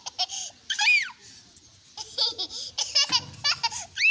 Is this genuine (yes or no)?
yes